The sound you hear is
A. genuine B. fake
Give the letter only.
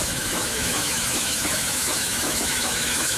B